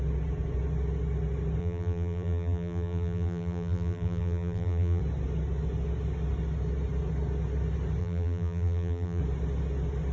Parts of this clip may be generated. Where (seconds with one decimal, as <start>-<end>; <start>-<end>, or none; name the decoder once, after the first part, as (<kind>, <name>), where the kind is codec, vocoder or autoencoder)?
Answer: 1.6-5.0 (vocoder, BigVGAN v2); 8.0-9.2